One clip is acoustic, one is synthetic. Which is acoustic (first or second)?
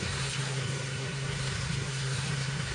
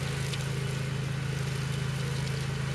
second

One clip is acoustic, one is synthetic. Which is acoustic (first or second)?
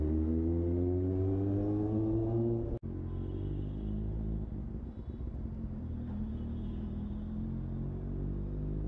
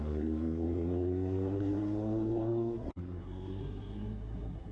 first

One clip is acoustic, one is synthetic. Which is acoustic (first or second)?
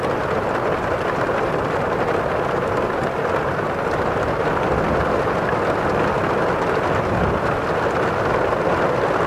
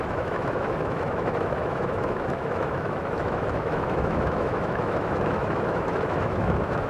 first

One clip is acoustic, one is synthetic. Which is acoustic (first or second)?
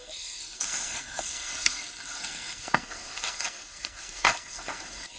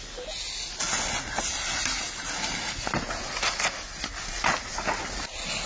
second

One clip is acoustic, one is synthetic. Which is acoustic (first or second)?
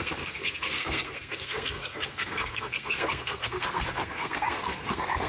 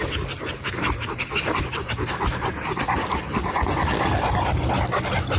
second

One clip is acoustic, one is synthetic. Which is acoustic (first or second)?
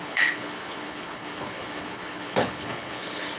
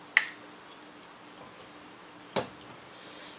second